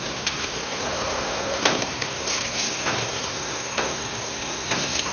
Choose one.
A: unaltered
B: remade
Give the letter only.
B